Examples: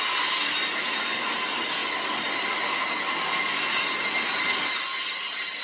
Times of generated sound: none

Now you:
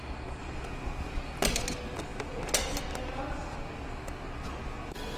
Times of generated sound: none

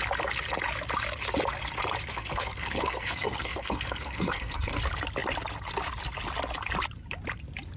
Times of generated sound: 2.1-4.8 (codec, SNAC)

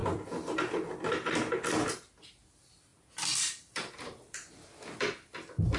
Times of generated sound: 0.0-1.1 (vocoder, BigVGAN v2); 2.9-4.5

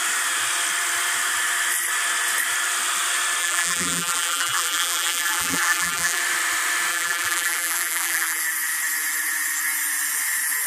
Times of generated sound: 3.4-6.2 (vocoder, BigVGAN v2); 6.9-8.4

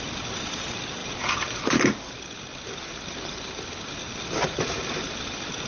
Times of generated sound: none